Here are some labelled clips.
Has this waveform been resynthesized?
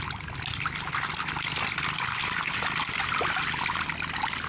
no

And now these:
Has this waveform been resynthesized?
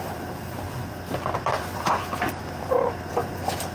yes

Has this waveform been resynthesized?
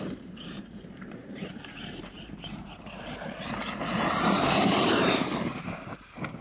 yes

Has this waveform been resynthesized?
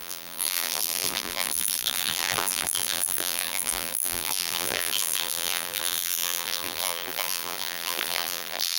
yes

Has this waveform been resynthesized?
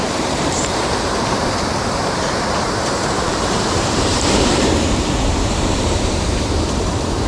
yes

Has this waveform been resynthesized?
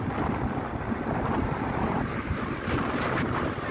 no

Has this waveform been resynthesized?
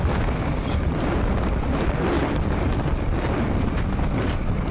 yes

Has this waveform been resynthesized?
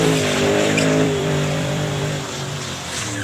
yes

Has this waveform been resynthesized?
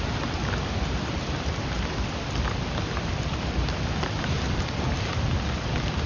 yes